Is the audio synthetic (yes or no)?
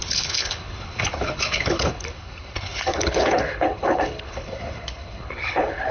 yes